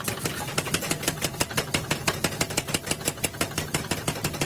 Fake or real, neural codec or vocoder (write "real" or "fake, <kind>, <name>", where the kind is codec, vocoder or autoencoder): real